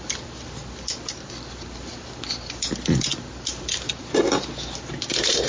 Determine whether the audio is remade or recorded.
recorded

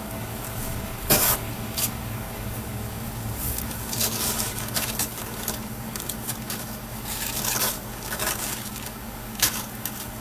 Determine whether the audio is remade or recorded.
remade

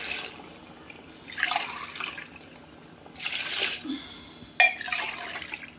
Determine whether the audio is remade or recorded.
recorded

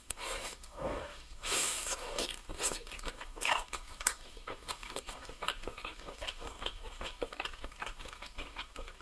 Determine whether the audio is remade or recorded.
remade